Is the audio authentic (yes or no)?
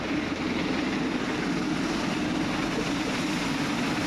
no